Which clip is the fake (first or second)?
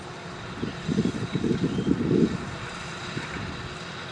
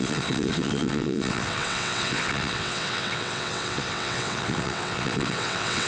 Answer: second